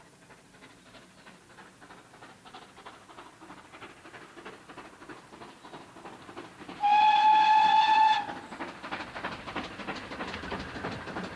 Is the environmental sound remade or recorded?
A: recorded